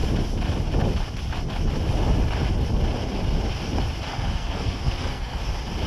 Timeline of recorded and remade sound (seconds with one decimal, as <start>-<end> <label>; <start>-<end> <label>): 0.0-4.1 recorded; 4.1-5.4 remade; 5.4-5.9 recorded